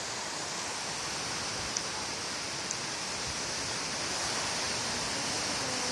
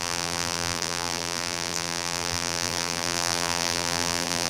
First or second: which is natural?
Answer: first